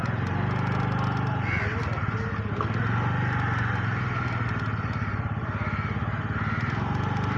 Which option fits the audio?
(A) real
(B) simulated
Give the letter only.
A